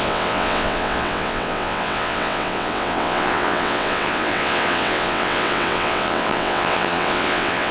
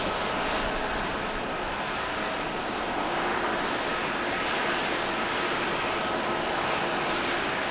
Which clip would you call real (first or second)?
second